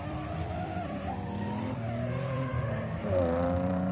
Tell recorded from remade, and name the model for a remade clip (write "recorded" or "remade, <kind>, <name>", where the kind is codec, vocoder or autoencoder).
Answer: remade, vocoder, BigVGAN v2